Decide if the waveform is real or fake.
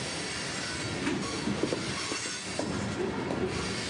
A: real